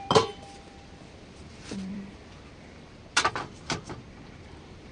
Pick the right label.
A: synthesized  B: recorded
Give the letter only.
A